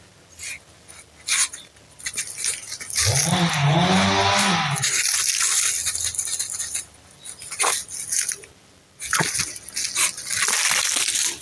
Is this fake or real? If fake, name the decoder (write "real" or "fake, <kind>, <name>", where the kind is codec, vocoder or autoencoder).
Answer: real